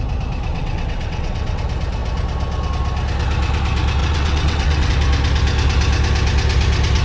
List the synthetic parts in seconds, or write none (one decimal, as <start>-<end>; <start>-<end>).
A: 0.5-1.6; 4.0-4.9